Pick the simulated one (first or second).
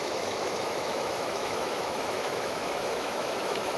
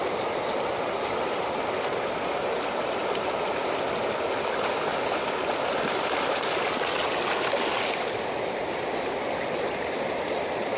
first